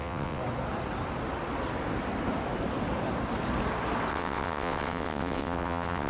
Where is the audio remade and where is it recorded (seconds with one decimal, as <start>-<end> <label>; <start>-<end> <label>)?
0.0-0.4 remade; 0.4-4.1 recorded; 4.1-6.1 remade